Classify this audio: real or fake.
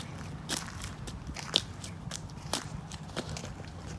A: fake